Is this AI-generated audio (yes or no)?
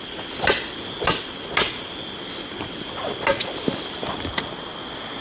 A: no